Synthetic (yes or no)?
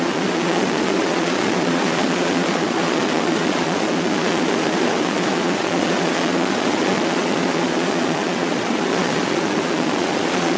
yes